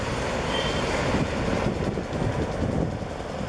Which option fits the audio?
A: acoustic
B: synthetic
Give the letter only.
A